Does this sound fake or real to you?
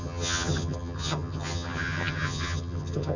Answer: fake